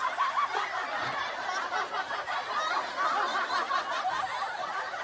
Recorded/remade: recorded